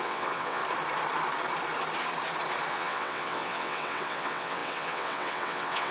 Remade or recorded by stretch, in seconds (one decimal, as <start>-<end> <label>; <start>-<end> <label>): 0.0-0.6 remade; 0.6-2.7 recorded; 2.7-5.9 remade